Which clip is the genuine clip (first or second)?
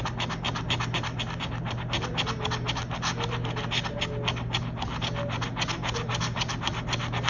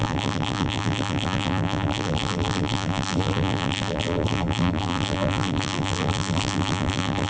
first